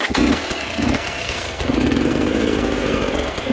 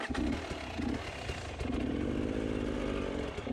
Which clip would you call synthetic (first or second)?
first